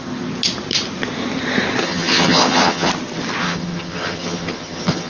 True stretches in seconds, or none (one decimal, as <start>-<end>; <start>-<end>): 0.0-1.8; 2.9-3.4